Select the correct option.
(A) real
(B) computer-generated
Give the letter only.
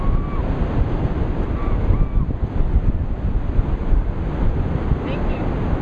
A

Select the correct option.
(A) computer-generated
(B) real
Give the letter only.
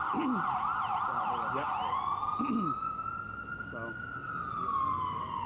B